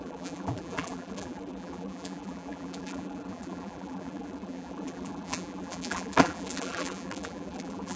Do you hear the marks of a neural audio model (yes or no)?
yes